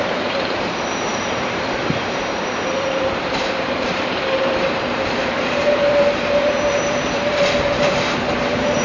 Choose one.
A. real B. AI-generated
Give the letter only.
B